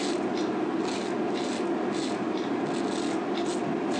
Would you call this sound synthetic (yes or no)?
no